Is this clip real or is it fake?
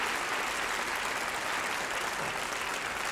real